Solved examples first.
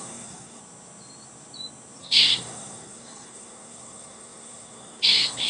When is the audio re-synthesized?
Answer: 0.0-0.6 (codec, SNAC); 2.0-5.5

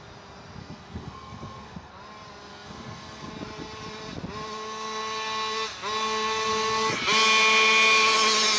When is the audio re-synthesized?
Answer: 0.6-1.9 (codec, SNAC); 2.5-3.3

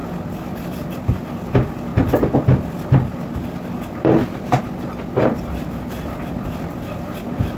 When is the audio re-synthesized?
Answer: none

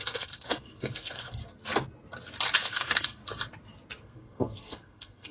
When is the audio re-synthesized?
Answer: 0.0-1.4 (codec, SNAC); 2.6-3.2; 4.0-5.3

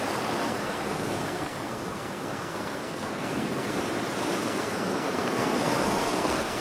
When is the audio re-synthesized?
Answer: 0.4-3.8 (codec, SNAC); 4.4-6.6

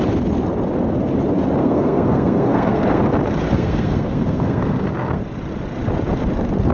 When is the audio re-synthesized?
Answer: 1.6-3.0 (codec, SNAC); 3.5-5.2

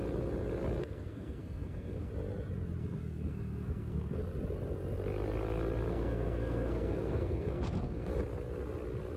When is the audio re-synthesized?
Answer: 0.8-2.1 (codec, SNAC); 2.8-4.2; 5.9-8.1